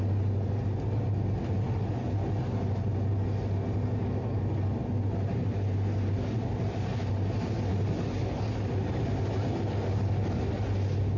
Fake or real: real